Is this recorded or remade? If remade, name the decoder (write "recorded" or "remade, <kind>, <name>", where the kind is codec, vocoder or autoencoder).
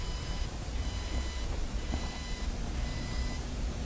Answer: remade, vocoder, BigVGAN v2